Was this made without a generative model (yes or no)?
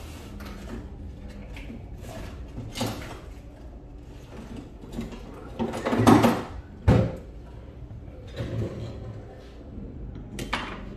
yes